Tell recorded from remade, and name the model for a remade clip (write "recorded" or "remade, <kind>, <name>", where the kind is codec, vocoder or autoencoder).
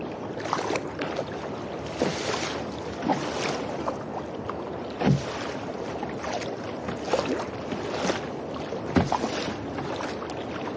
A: recorded